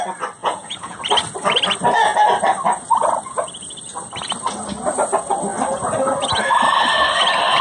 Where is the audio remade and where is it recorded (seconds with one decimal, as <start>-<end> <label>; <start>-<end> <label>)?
0.0-0.4 recorded; 0.4-1.0 remade; 1.0-7.6 recorded